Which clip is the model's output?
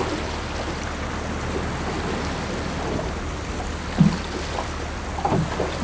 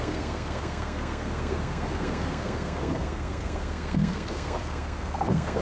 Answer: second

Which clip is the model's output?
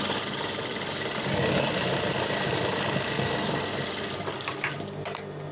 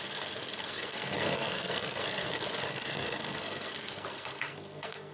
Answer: second